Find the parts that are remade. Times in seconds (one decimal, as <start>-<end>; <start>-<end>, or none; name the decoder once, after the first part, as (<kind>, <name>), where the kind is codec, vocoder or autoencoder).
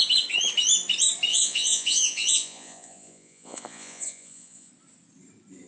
1.3-4.7 (vocoder, Vocos)